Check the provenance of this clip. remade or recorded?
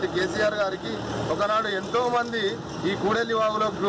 recorded